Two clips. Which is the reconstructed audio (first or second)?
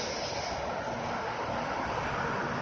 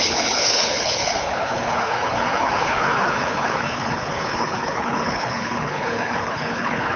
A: second